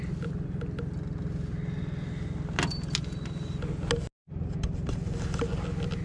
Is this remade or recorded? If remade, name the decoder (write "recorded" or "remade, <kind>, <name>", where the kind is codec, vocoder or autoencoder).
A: recorded